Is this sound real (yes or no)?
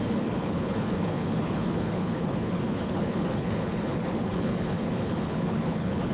no